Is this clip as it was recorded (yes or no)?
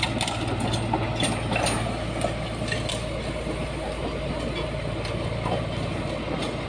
yes